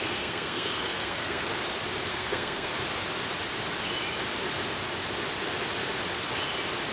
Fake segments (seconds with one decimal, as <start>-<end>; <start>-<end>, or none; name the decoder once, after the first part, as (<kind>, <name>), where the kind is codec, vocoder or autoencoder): 0.0-1.5 (codec, SNAC); 2.1-2.7